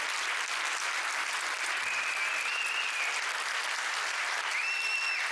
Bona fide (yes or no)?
yes